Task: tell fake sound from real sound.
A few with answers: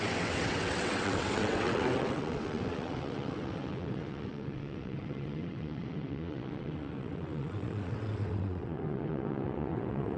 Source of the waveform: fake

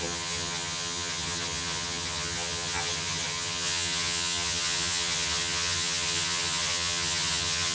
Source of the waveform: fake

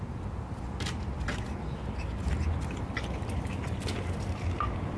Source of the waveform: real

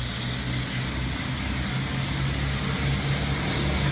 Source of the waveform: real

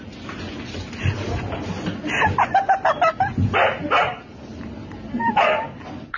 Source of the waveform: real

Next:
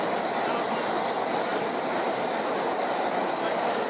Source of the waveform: real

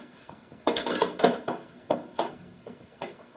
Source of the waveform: fake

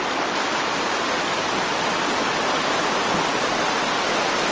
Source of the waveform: real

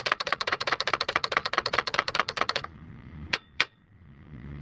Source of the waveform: fake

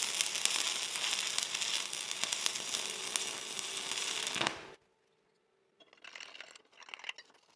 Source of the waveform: real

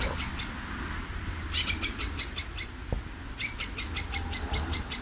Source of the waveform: fake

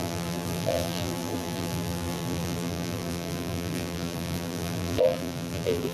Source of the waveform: fake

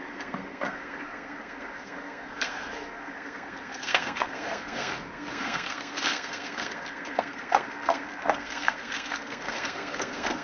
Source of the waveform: fake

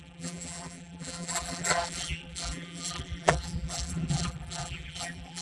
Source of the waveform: fake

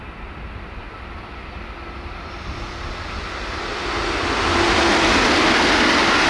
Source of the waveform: real